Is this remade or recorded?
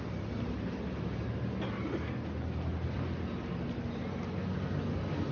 recorded